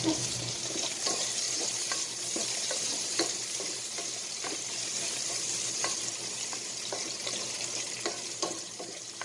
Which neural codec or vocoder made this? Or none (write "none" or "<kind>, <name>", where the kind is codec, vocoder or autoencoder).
vocoder, BigVGAN v2